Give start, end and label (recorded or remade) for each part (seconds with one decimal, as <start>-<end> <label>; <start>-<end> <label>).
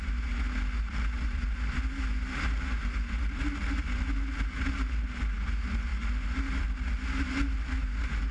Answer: 0.0-8.3 recorded